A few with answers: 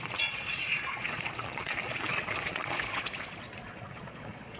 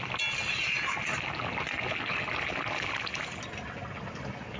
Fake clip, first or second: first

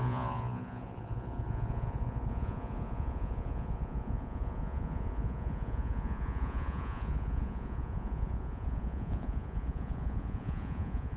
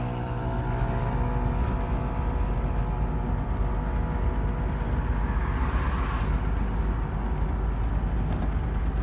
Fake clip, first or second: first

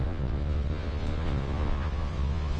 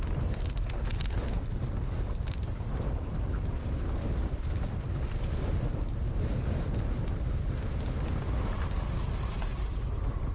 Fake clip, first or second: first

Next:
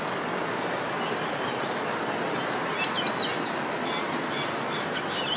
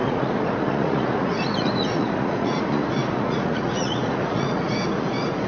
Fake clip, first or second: second